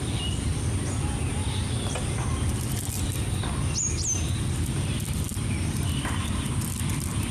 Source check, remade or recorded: recorded